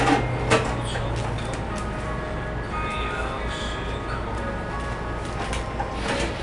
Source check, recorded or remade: recorded